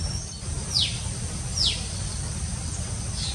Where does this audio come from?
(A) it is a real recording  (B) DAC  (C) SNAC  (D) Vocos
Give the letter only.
A